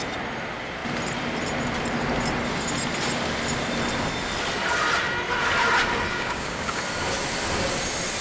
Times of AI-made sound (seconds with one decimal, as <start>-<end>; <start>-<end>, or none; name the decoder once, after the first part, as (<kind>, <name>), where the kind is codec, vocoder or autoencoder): 6.1-6.8 (codec, DAC)